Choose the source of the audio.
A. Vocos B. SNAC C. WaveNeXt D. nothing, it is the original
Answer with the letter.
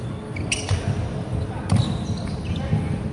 D